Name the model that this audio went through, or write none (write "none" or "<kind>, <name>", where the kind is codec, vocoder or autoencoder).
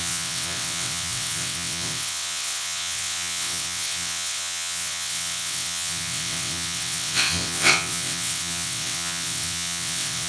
vocoder, WaveNeXt